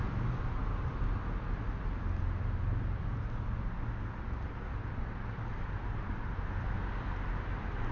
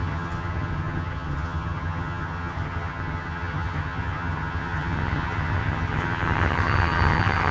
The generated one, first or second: second